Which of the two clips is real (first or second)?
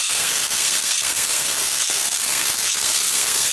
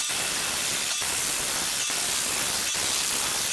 second